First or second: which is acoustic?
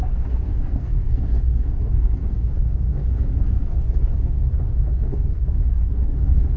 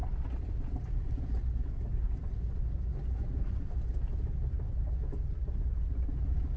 second